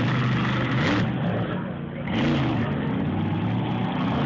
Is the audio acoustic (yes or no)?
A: yes